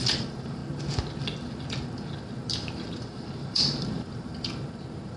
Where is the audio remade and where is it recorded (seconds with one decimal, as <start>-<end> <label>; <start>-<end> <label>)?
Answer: 0.0-0.6 remade; 0.6-3.0 recorded; 3.0-4.3 remade; 4.3-5.2 recorded